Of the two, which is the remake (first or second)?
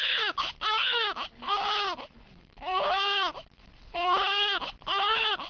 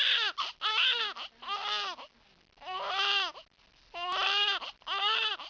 first